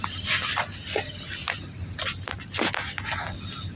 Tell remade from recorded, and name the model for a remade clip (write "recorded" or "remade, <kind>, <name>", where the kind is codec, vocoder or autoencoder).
recorded